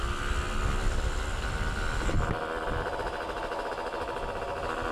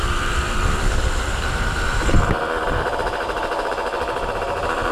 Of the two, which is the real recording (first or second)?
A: first